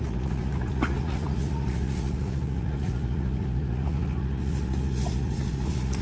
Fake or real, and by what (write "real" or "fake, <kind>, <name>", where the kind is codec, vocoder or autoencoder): fake, vocoder, Vocos